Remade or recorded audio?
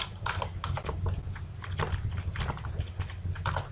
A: recorded